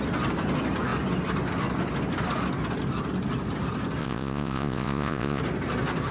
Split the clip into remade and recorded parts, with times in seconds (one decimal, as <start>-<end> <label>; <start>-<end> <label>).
0.0-4.0 recorded; 4.0-5.4 remade; 5.4-6.1 recorded